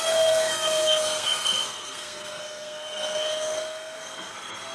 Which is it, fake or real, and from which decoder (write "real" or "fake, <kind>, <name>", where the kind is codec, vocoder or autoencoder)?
fake, codec, SNAC